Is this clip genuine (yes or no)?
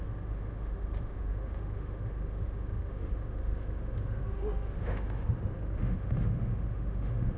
no